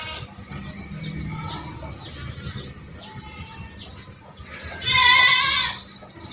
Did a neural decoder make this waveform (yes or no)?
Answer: no